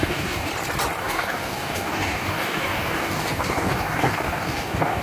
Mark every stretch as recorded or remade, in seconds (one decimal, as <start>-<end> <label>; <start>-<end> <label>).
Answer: 0.0-0.5 remade; 0.5-1.0 recorded; 1.0-5.0 remade